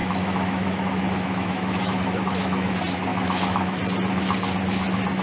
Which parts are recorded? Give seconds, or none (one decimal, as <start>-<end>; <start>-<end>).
2.7-3.1; 3.8-5.2